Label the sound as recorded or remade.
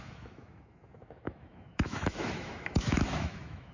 remade